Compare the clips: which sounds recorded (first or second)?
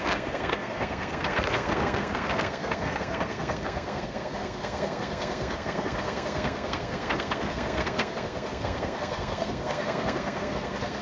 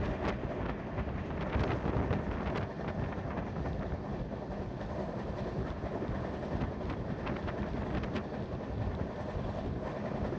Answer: second